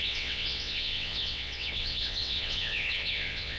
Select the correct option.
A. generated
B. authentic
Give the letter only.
A